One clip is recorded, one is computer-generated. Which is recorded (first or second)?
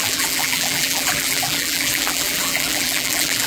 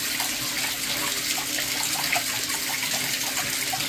second